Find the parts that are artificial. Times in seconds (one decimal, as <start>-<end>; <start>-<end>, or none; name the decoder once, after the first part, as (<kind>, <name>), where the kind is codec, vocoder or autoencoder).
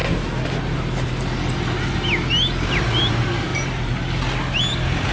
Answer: none